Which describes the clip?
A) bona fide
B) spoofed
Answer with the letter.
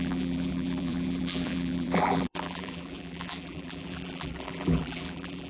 B